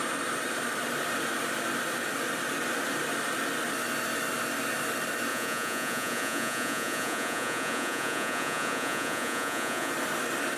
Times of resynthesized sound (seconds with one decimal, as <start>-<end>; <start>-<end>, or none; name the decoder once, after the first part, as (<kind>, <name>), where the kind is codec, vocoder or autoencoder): 5.3-9.9 (vocoder, Vocos)